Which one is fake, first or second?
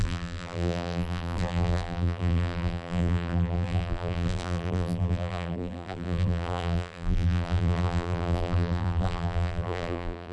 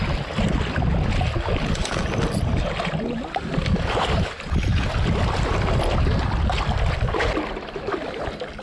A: first